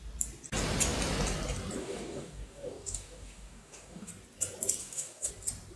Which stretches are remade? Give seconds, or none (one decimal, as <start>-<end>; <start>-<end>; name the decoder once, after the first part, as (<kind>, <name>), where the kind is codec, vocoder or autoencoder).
1.8-4.1 (codec, DAC); 4.8-5.3